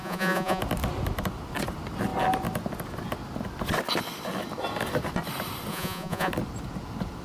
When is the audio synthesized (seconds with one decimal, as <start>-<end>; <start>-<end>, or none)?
0.0-0.6; 5.7-6.3